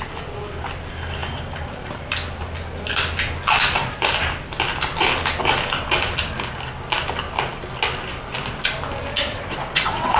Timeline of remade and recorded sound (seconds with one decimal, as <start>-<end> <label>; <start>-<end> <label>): 0.0-9.3 recorded; 9.3-10.2 remade